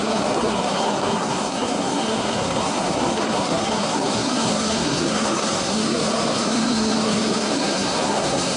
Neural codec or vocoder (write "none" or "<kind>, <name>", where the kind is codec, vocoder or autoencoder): codec, SNAC